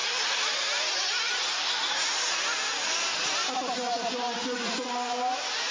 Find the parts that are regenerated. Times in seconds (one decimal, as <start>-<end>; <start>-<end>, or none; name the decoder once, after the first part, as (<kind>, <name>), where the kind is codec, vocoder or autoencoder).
none